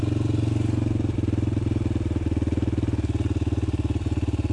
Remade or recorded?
recorded